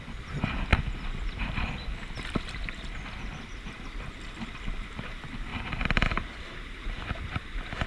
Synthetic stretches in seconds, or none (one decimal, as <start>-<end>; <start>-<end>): 5.5-7.9